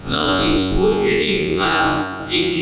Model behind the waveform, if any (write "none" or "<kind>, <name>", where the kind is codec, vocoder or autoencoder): vocoder, Vocos